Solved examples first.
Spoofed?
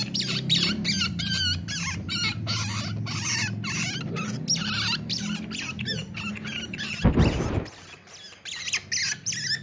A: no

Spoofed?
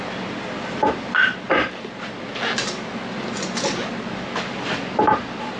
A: no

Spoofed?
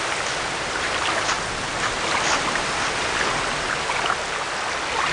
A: no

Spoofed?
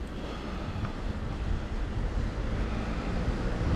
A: no